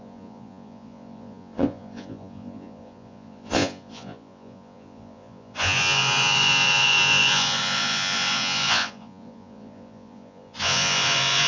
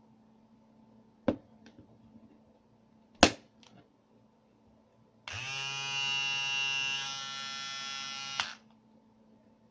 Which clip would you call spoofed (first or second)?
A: first